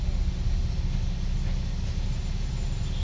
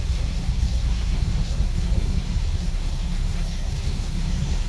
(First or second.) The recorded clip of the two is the first